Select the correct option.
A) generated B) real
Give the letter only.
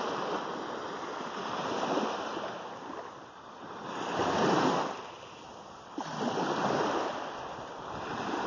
A